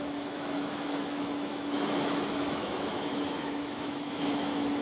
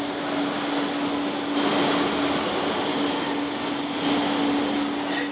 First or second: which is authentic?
second